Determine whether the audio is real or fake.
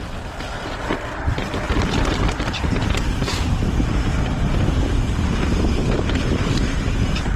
fake